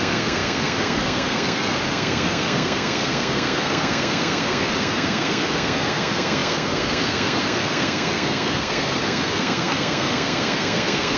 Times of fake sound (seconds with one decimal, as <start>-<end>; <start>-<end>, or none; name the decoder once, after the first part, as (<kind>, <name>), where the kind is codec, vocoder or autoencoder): 0.0-11.2 (codec, SNAC)